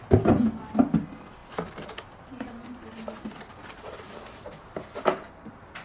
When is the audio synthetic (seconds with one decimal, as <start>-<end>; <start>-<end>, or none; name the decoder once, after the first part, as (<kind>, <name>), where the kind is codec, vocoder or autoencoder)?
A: none